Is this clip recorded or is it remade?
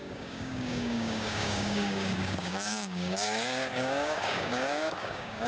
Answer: remade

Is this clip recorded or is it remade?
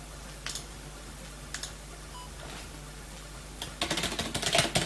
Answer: recorded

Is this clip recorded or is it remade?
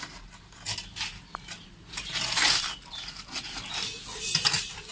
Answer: recorded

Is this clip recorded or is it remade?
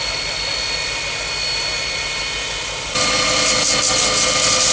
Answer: recorded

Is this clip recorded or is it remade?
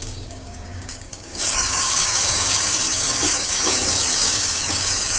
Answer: remade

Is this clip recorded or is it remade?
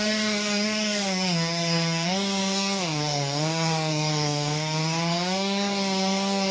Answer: remade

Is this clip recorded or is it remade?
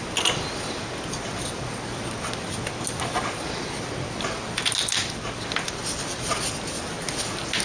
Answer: recorded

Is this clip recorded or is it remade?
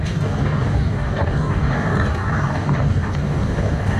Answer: remade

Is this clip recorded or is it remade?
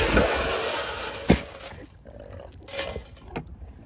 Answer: recorded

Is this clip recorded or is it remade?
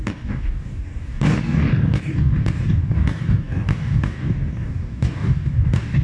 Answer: remade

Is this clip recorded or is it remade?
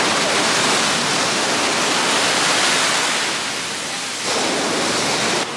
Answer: recorded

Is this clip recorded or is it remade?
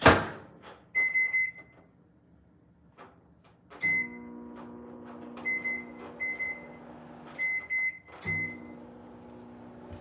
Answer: recorded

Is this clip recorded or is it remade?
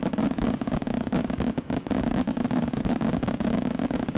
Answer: remade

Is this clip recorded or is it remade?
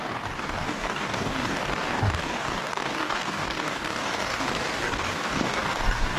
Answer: remade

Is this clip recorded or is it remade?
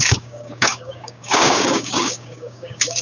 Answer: remade